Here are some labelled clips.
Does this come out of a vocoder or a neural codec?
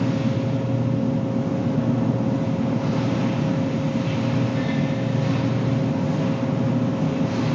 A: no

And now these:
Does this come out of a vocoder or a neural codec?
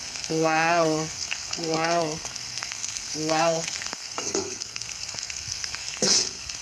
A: yes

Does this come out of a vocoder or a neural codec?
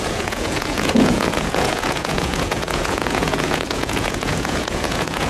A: yes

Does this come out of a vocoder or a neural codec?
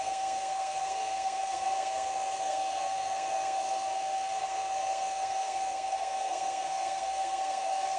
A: yes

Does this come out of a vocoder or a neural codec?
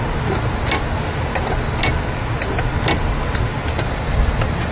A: no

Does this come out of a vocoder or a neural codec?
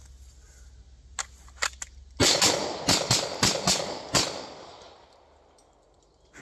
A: no